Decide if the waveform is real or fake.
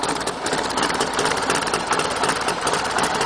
real